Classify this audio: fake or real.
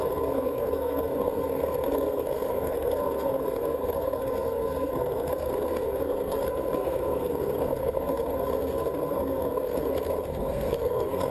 fake